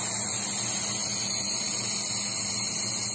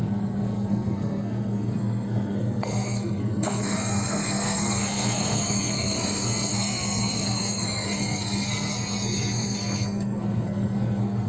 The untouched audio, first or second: first